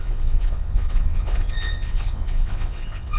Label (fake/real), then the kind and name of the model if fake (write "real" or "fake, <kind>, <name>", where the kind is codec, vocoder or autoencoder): fake, vocoder, WaveNeXt